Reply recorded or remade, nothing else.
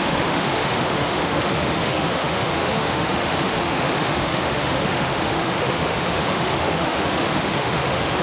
remade